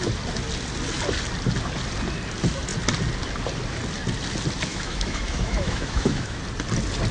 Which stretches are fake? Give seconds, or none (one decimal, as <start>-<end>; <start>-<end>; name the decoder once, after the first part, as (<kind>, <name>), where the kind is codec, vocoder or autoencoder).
4.7-6.4 (autoencoder, DAC-VAE)